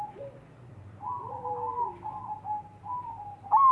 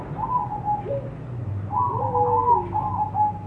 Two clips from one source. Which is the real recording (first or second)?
second